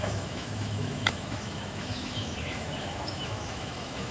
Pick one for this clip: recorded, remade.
remade